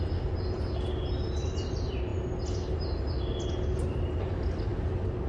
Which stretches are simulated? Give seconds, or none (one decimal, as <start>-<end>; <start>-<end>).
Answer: none